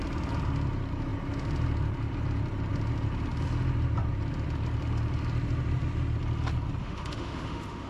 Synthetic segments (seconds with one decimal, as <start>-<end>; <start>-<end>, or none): 6.8-7.9